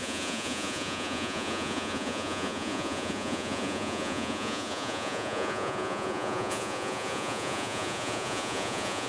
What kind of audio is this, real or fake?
fake